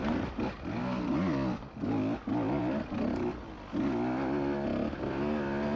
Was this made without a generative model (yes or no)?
yes